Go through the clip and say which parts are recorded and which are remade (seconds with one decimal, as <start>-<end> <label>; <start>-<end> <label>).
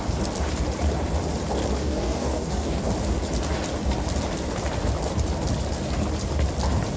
0.0-1.8 recorded; 1.8-2.9 remade; 2.9-7.0 recorded